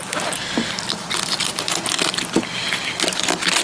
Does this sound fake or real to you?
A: real